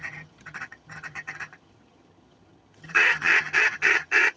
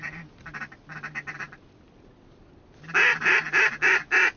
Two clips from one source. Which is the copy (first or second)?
first